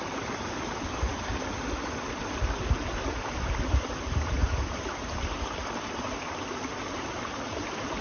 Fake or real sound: real